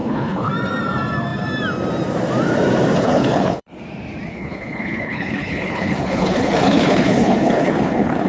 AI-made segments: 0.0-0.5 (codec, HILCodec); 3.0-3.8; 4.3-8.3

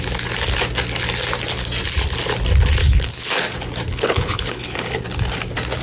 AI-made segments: 2.8-3.3 (codec, HILCodec); 3.9-5.0

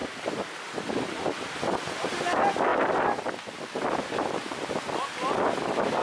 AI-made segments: none

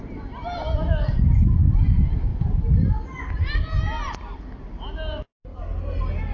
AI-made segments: none

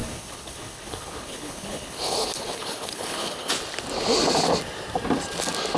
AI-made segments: 0.0-3.5 (codec, HILCodec)

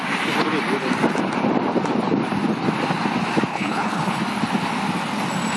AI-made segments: 3.5-4.2 (codec, HILCodec)

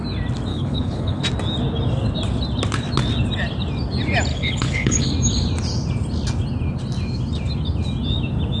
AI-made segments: 0.5-1.2 (codec, HILCodec); 4.3-5.1